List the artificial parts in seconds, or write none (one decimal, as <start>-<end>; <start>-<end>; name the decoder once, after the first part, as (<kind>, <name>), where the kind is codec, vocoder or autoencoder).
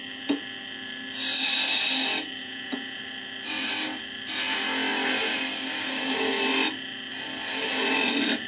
2.4-3.0 (vocoder, Vocos)